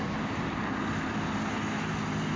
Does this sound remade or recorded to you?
recorded